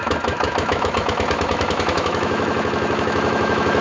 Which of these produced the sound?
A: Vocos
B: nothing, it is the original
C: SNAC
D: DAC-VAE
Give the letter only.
D